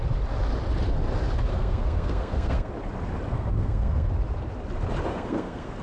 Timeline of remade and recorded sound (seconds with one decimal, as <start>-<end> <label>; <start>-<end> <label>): 0.0-1.5 recorded; 1.5-2.7 remade; 2.7-3.3 recorded; 3.3-4.1 remade; 4.1-5.1 recorded; 5.1-5.8 remade